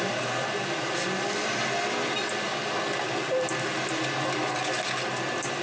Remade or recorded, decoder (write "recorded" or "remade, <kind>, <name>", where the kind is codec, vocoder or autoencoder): recorded